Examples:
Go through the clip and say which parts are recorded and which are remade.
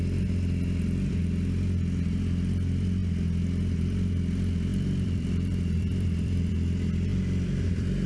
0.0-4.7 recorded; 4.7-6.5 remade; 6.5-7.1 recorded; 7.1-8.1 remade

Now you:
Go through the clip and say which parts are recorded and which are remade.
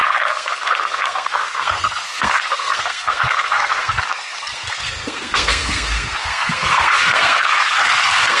0.0-8.4 remade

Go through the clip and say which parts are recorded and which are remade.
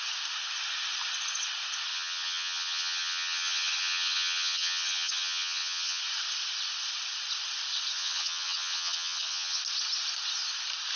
0.0-1.9 recorded; 1.9-6.0 remade; 6.0-8.0 recorded; 8.0-9.6 remade; 9.6-11.0 recorded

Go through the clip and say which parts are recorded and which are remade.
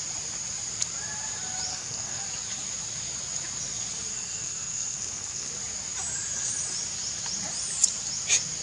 0.0-1.7 recorded; 1.7-2.2 remade; 2.2-4.1 recorded; 4.1-5.5 remade; 5.5-8.6 recorded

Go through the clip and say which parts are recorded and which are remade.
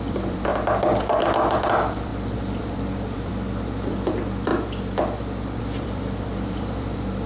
0.0-0.5 remade; 0.5-1.2 recorded; 1.2-2.1 remade; 2.1-2.6 recorded; 2.6-3.3 remade; 3.3-3.9 recorded; 3.9-4.5 remade; 4.5-5.6 recorded; 5.6-7.3 remade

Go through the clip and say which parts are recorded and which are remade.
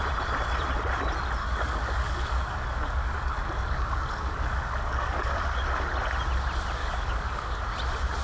0.0-1.4 recorded; 1.4-5.4 remade; 5.4-6.8 recorded; 6.8-7.7 remade; 7.7-8.2 recorded